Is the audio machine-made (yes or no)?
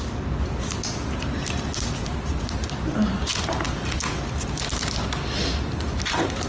no